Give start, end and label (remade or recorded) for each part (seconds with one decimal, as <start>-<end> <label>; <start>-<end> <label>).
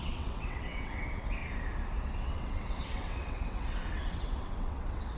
0.0-1.4 remade; 1.4-2.2 recorded; 2.2-5.2 remade